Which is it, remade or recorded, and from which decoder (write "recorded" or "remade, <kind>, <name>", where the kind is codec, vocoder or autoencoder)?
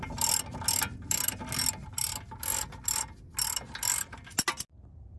recorded